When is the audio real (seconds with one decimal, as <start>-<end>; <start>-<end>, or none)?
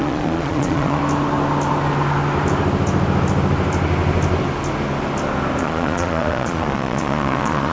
1.0-5.6